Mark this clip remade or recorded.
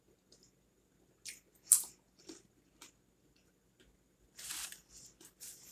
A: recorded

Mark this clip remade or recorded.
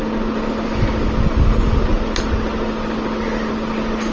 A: recorded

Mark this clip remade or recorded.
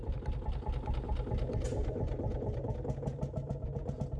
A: recorded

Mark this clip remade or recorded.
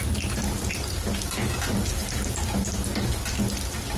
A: recorded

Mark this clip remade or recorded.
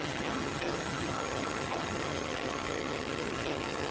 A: remade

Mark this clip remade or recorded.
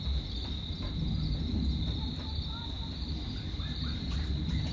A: recorded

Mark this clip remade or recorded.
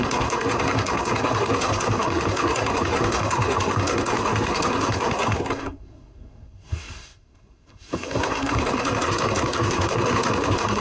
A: remade